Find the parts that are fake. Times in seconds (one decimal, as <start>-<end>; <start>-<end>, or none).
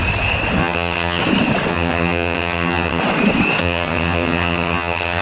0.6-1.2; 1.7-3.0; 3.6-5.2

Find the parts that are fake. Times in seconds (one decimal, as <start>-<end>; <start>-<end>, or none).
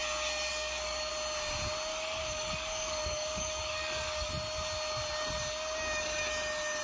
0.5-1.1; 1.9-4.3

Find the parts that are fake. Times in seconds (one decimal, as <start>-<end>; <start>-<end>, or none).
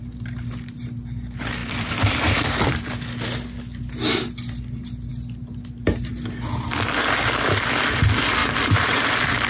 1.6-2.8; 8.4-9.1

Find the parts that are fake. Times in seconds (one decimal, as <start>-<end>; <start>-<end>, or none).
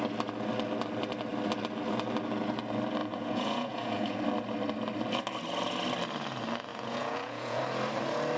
3.0-4.2; 6.7-7.6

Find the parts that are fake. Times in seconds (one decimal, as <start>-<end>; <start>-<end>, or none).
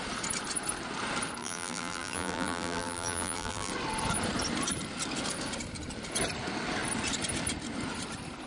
1.4-3.7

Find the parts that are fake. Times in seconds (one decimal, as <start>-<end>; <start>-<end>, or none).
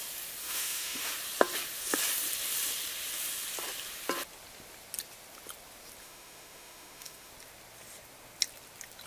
0.4-1.0; 6.0-7.3